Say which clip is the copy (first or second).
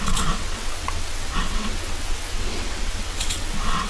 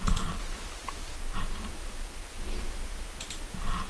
first